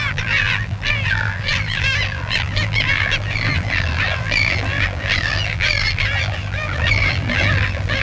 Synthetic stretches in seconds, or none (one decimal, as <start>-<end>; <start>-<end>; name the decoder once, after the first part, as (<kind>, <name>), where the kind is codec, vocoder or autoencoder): 0.0-8.0 (vocoder, BigVGAN v2)

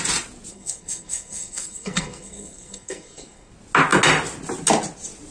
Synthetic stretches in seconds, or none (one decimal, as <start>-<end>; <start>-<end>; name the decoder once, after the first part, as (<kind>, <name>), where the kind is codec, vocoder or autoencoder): 0.5-3.5 (codec, SNAC)